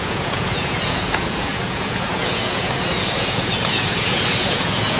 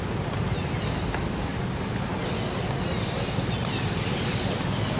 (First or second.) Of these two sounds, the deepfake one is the first